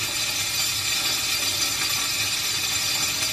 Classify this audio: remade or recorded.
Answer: recorded